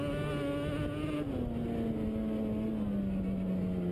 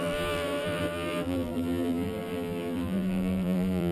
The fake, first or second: second